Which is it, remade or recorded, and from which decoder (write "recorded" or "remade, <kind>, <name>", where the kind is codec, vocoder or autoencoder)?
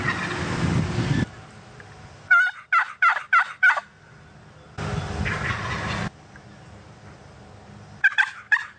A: recorded